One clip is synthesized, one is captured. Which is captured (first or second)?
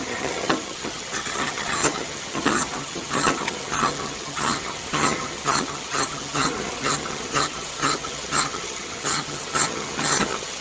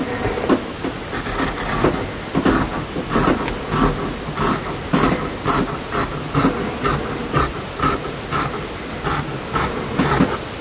second